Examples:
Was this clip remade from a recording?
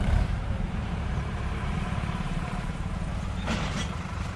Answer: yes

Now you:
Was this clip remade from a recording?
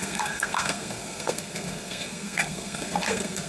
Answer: yes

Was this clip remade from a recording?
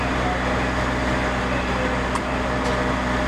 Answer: no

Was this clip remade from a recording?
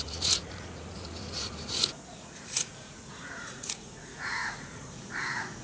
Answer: yes